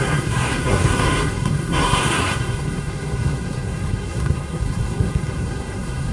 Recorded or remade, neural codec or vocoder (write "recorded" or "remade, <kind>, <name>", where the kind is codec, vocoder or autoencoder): remade, codec, SNAC